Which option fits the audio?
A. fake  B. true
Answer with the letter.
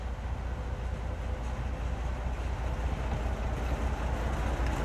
B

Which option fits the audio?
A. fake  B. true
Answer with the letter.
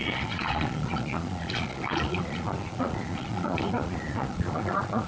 A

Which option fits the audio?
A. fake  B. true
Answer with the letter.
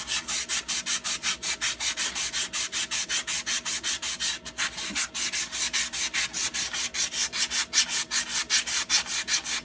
B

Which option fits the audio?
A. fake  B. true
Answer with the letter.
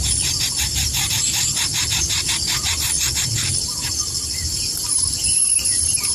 B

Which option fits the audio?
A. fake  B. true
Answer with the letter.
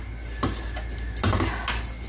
B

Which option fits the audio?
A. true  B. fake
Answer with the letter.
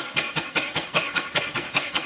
B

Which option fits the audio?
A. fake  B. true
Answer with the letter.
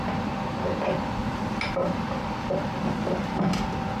B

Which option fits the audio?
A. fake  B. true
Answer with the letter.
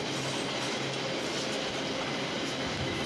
B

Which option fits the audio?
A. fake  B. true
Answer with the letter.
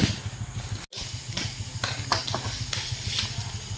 B